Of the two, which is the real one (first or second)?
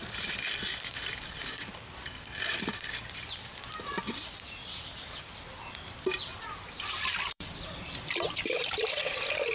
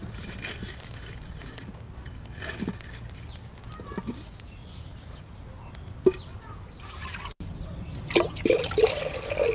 second